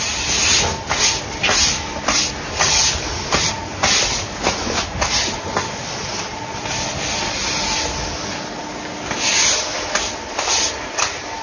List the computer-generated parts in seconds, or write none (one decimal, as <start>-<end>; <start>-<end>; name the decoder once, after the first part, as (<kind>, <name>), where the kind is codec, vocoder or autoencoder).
none